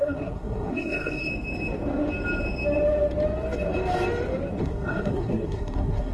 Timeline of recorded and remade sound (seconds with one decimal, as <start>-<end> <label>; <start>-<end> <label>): 0.0-1.3 remade; 1.3-4.6 recorded; 4.6-6.1 remade